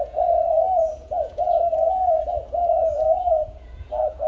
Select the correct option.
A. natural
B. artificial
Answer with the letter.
B